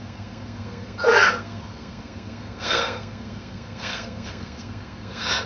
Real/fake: fake